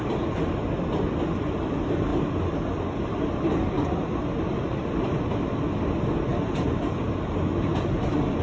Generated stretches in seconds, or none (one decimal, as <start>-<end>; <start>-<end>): 6.3-7.1